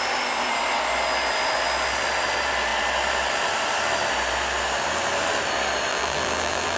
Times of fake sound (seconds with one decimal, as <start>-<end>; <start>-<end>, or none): 5.9-6.8

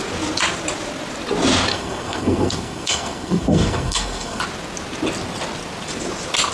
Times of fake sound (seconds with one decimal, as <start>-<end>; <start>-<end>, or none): 1.7-4.4

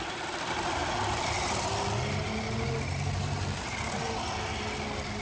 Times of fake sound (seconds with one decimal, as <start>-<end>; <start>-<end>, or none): none

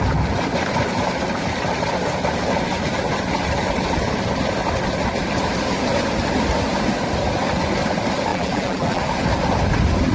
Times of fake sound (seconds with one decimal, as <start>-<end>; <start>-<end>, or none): 8.3-9.0

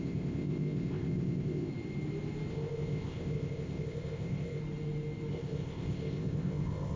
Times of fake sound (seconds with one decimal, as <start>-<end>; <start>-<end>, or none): 0.0-1.7; 2.5-4.6; 5.3-7.0